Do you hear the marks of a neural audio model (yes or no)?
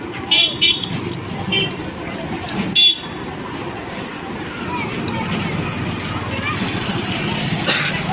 no